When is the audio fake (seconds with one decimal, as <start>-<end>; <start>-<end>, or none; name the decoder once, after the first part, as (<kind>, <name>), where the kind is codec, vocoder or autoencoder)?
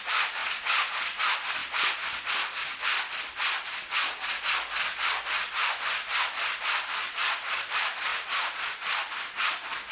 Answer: none